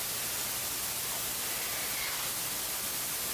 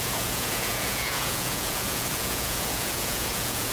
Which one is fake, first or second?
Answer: second